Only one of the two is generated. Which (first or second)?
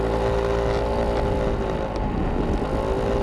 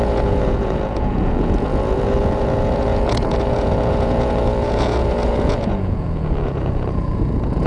second